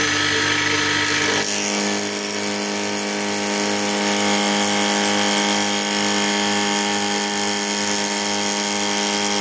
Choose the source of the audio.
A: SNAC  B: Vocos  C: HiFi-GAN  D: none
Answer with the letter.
D